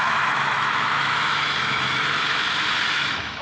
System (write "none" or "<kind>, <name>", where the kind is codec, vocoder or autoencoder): autoencoder, DAC-VAE